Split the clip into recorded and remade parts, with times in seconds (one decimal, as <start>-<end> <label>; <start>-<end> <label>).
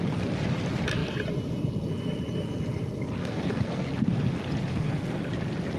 0.0-3.2 recorded; 3.2-3.9 remade; 3.9-4.7 recorded; 4.7-5.2 remade; 5.2-5.8 recorded